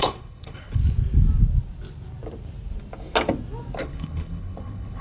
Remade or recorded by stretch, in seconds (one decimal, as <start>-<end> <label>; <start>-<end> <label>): 0.0-0.8 remade; 0.8-3.8 recorded; 3.8-5.0 remade